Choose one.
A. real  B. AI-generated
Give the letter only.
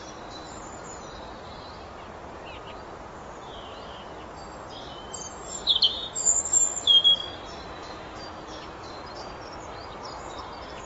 A